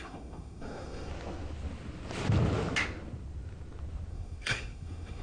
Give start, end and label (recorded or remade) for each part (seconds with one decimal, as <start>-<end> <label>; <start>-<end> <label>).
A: 0.0-1.1 remade; 1.1-4.1 recorded; 4.1-5.2 remade